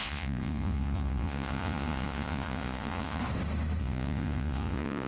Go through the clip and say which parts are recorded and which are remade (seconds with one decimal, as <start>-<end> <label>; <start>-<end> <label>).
0.0-3.2 remade; 3.2-3.8 recorded; 3.8-5.1 remade